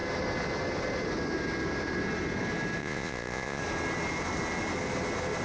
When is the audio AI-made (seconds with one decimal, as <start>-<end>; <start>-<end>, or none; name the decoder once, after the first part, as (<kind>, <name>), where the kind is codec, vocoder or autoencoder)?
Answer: 2.8-3.6 (vocoder, Vocos)